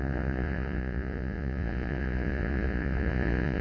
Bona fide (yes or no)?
no